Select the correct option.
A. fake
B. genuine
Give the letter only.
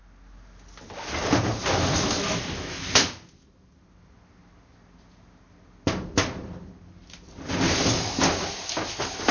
B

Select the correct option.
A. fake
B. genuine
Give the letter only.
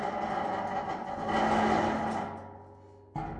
B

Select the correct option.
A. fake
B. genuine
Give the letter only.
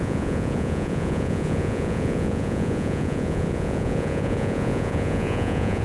A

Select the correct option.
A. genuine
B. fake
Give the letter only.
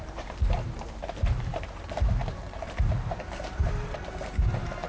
B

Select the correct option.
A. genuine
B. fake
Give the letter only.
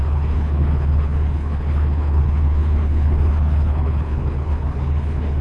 B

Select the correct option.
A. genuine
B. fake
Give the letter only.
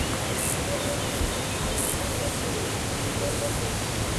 A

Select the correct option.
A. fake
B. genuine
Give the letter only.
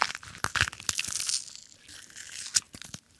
B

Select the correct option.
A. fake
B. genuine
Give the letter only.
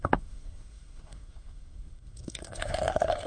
A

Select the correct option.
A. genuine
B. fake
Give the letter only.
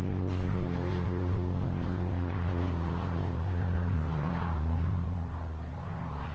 B